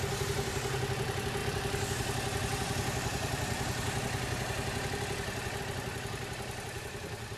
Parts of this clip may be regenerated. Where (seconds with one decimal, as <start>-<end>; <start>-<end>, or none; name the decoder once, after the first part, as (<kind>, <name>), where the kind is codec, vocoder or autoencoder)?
none